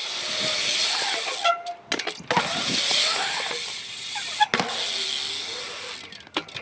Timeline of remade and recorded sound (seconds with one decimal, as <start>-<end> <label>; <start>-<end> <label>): 0.0-6.6 recorded